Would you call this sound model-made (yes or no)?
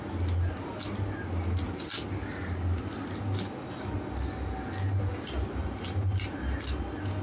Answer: no